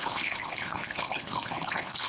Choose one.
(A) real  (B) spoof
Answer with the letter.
B